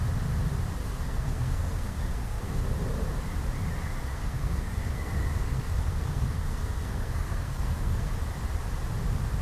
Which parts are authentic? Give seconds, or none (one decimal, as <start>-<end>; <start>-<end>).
0.0-0.8; 2.6-4.0; 8.1-9.4